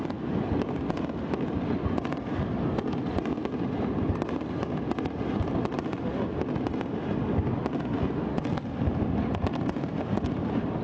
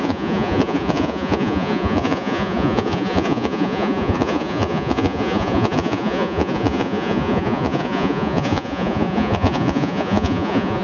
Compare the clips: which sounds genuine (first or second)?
first